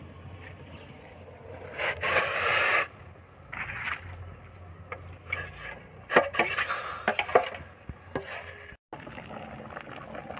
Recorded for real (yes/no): yes